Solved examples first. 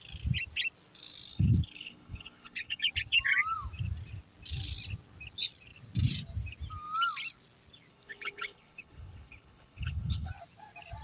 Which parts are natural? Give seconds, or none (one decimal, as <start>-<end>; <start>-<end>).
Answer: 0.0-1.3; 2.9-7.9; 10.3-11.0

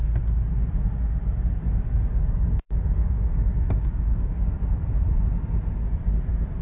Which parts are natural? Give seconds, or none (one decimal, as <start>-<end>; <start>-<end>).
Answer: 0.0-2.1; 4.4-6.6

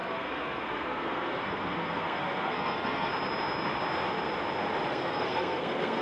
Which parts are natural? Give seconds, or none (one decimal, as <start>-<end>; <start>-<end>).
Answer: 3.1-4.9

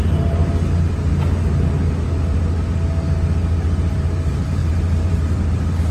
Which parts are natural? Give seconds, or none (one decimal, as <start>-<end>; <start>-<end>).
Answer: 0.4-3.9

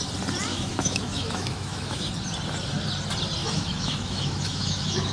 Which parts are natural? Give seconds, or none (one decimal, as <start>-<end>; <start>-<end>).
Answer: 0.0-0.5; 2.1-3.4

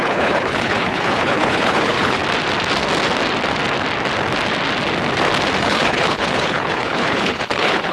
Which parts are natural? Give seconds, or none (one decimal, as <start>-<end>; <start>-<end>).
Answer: 2.2-5.6